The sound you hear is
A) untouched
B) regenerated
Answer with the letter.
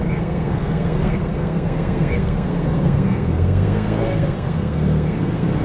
B